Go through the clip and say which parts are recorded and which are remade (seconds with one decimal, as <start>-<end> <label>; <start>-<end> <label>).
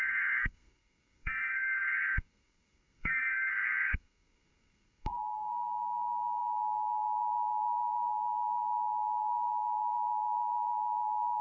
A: 0.0-11.4 remade